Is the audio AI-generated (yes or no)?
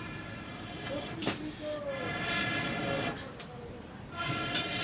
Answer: no